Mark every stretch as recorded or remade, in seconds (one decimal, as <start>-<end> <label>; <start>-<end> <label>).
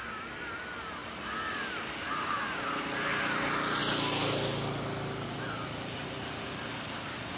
0.0-7.4 recorded